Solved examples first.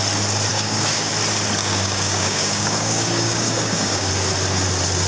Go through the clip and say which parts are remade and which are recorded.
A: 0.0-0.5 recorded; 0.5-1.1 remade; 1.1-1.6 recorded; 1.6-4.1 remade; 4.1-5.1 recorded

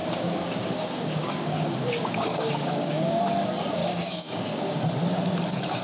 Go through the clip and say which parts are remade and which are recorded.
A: 0.0-3.2 remade; 3.2-3.8 recorded; 3.8-4.8 remade; 4.8-5.8 recorded

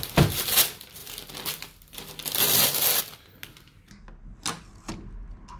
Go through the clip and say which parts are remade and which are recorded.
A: 0.0-5.6 recorded

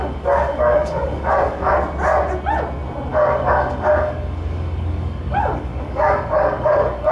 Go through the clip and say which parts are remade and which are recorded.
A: 0.0-1.8 remade; 1.8-3.1 recorded; 3.1-7.1 remade

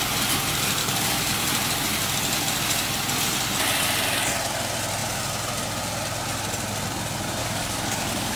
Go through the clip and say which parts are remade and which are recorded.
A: 0.0-0.8 recorded; 0.8-1.4 remade; 1.4-7.4 recorded; 7.4-8.4 remade

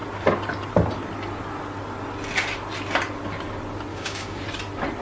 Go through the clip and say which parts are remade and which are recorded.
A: 0.0-3.9 recorded; 3.9-4.4 remade; 4.4-5.0 recorded

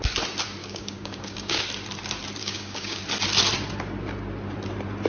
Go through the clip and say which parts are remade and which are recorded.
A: 0.0-0.6 recorded; 0.6-1.6 remade; 1.6-2.4 recorded; 2.4-3.0 remade; 3.0-5.1 recorded

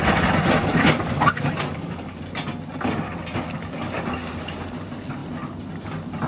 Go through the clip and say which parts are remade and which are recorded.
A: 0.0-0.6 recorded; 0.6-2.2 remade; 2.2-6.3 recorded